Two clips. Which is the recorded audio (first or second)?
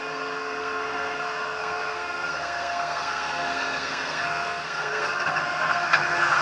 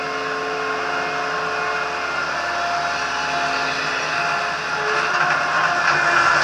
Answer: second